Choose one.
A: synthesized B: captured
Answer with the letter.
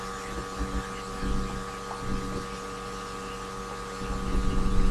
B